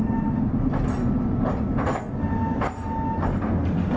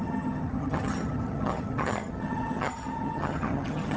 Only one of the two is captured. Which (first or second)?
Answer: first